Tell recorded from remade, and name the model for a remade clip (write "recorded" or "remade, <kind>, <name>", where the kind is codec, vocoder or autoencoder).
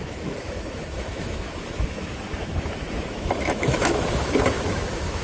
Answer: remade, autoencoder, DAC-VAE